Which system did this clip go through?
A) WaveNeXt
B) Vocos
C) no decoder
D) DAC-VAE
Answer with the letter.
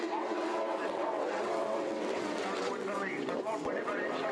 A